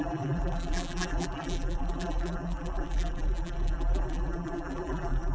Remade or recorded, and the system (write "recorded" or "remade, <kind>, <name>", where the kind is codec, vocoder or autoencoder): remade, vocoder, BigVGAN v2